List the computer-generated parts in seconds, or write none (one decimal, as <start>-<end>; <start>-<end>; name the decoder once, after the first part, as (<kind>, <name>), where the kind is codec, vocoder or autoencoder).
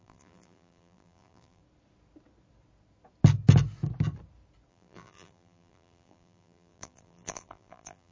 0.0-1.6 (vocoder, BigVGAN v2); 4.7-8.1